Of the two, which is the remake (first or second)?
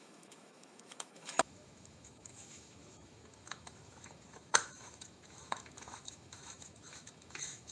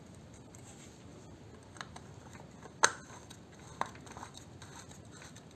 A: first